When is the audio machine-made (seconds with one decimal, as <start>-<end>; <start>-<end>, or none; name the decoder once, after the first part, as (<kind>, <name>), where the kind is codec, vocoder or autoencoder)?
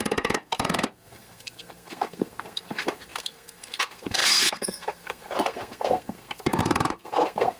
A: 0.0-7.6 (codec, SNAC)